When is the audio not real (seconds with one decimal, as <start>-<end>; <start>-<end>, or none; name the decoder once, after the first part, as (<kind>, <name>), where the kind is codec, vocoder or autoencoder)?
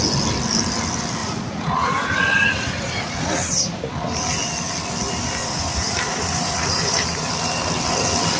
1.2-3.9 (vocoder, Vocos); 5.4-7.3